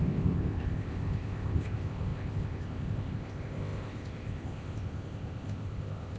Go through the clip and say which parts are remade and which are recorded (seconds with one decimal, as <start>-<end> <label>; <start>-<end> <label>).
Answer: 0.0-6.2 remade